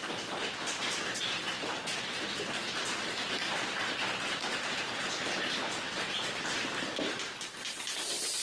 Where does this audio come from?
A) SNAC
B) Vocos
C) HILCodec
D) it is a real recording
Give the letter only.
D